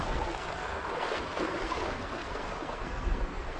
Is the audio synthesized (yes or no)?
yes